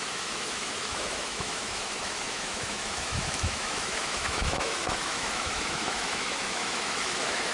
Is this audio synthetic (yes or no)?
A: yes